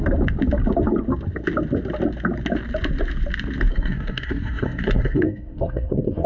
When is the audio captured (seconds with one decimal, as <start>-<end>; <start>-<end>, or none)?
0.0-3.7